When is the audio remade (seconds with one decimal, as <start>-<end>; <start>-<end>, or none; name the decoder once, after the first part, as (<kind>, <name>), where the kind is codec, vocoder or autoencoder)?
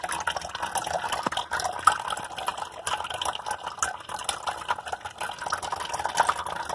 none